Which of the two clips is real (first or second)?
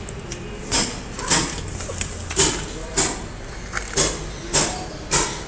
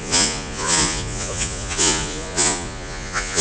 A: first